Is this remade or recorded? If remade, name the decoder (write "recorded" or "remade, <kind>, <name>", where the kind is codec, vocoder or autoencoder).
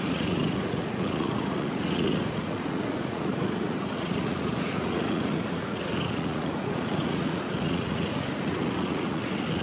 remade, vocoder, Vocos